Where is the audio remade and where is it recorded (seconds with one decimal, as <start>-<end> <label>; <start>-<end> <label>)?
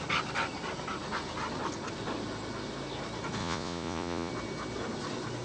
0.0-3.4 recorded; 3.4-4.3 remade; 4.3-5.4 recorded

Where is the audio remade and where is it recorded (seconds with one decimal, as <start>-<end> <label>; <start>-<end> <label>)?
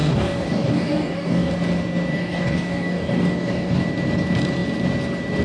0.0-1.5 remade; 1.5-2.1 recorded; 2.1-3.8 remade; 3.8-5.4 recorded